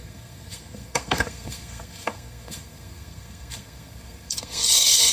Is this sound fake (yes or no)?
yes